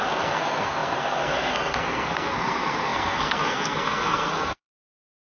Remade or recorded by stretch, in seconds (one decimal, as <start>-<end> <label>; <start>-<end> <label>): 0.0-5.4 remade